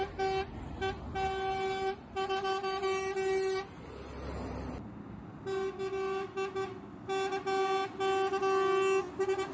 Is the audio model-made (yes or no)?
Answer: no